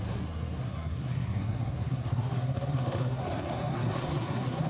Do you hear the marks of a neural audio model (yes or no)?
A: yes